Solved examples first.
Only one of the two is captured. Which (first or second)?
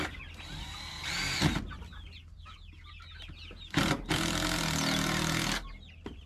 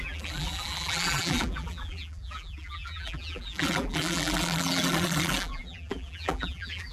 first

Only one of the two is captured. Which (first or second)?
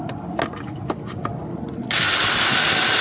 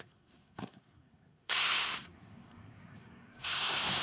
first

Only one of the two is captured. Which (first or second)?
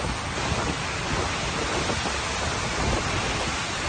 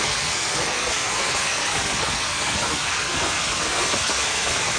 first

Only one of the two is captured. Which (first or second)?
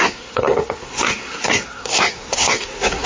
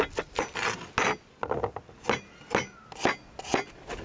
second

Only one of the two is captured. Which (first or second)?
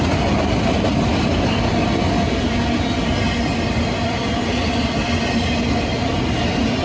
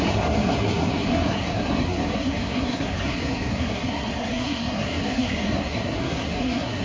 first